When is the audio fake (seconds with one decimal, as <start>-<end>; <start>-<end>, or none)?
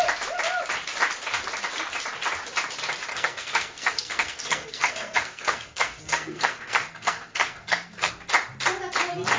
3.1-8.1